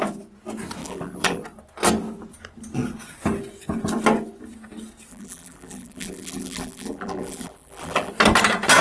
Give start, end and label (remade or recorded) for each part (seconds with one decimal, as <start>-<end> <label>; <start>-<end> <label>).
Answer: 0.0-0.8 recorded; 0.8-1.4 remade; 1.4-5.1 recorded; 5.1-8.1 remade; 8.1-8.8 recorded